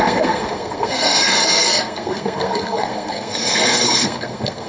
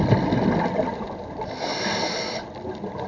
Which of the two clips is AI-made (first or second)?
first